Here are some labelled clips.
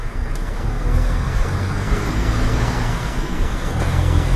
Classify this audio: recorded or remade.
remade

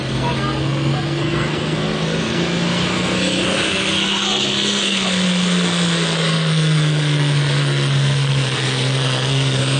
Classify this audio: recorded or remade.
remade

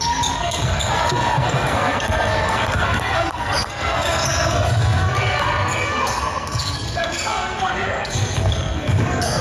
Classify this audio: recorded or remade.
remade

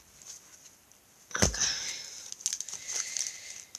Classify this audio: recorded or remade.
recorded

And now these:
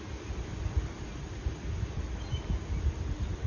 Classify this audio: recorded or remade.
recorded